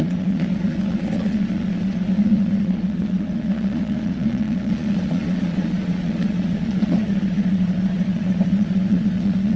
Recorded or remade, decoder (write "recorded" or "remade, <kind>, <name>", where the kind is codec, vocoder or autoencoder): remade, vocoder, Vocos